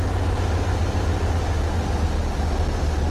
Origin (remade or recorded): recorded